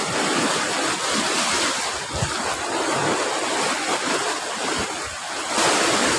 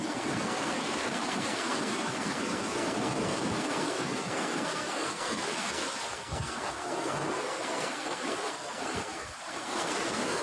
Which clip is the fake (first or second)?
second